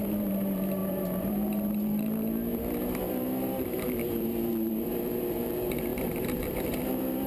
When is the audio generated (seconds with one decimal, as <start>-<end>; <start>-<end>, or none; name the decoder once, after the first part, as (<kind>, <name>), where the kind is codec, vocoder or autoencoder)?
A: 0.0-7.3 (vocoder, BigVGAN v2)